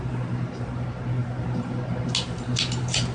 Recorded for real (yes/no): yes